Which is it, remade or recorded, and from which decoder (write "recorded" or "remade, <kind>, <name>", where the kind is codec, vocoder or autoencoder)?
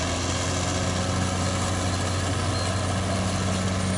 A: recorded